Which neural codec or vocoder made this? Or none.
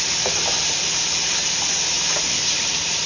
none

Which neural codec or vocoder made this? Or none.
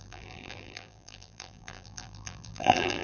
vocoder, BigVGAN v2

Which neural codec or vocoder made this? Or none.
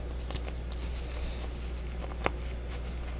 none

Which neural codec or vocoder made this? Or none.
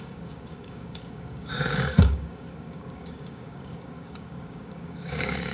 codec, DAC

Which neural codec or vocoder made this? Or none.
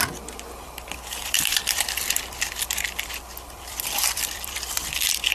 vocoder, BigVGAN v2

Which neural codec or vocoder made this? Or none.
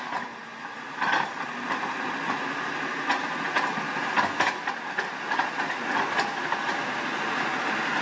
none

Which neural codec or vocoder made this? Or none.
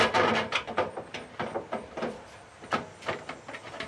vocoder, BigVGAN v2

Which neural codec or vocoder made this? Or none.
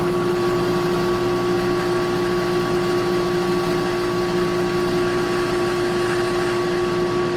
none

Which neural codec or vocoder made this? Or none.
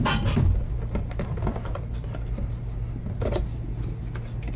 none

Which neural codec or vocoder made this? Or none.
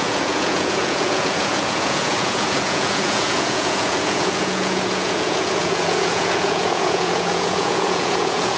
vocoder, Vocos